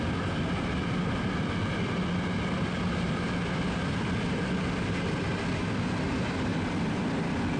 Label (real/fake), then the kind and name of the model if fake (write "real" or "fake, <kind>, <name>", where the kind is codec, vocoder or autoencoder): real